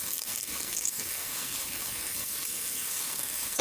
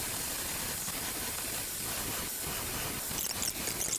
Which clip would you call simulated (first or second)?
first